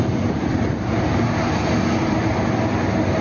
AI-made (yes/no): no